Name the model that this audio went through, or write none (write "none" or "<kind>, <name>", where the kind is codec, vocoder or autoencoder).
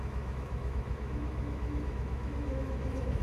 autoencoder, DAC-VAE